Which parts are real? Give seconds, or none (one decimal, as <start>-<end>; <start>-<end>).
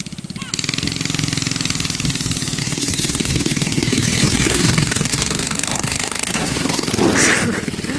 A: 0.0-2.6; 6.9-8.0